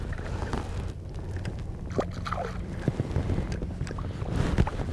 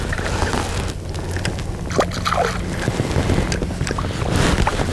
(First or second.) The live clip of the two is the second